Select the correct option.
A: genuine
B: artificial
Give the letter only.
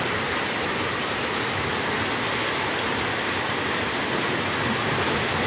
A